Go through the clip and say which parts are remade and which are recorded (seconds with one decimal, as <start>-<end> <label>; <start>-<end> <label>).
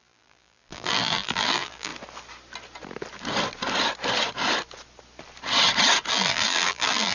0.0-1.9 remade; 1.9-6.1 recorded; 6.1-7.1 remade